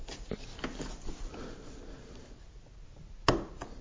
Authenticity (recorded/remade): recorded